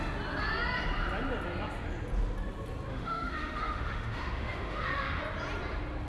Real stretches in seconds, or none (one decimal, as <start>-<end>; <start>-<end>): 0.0-2.9; 5.2-6.1